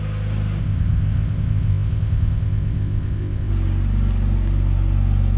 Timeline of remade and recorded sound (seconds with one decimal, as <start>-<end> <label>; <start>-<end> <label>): 0.0-0.6 recorded; 0.6-3.5 remade; 3.5-5.4 recorded